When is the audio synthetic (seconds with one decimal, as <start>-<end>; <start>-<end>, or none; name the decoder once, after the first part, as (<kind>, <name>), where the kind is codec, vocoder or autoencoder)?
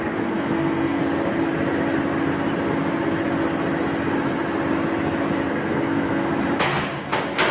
0.0-1.0 (codec, SNAC); 5.5-6.3